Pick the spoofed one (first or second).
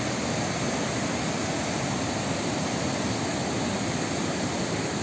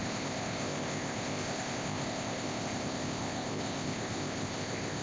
second